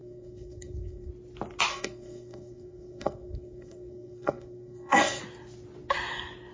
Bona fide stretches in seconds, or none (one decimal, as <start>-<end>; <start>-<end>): 1.1-1.7; 5.2-6.5